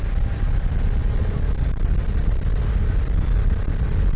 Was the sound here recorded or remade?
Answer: recorded